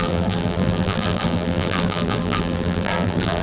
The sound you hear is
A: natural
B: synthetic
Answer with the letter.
B